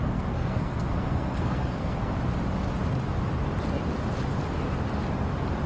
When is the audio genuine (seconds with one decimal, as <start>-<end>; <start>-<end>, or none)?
2.1-5.7